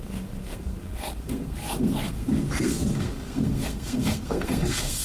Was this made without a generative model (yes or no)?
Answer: no